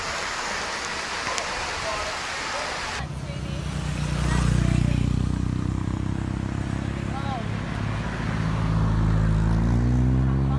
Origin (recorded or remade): recorded